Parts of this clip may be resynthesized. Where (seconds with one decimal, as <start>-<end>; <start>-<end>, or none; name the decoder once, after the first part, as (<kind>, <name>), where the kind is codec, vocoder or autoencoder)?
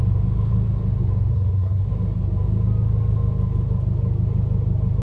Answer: 1.3-1.9 (codec, SNAC)